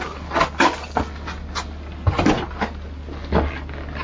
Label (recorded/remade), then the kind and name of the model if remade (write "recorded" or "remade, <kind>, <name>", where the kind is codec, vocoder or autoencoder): recorded